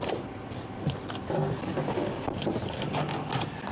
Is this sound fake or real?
fake